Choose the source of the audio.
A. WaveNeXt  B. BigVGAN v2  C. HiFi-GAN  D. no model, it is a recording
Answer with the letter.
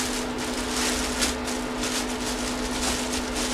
D